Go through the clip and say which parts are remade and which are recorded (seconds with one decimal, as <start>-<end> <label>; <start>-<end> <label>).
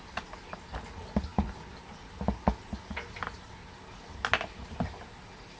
0.0-5.6 recorded